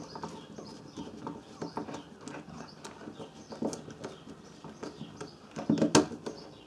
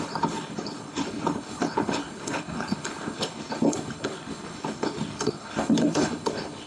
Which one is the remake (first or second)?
second